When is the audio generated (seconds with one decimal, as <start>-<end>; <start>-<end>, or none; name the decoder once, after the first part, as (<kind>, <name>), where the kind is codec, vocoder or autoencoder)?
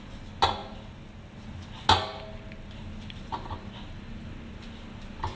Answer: none